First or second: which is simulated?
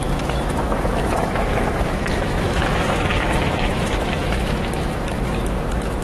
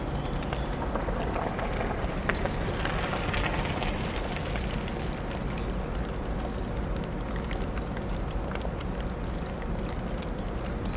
first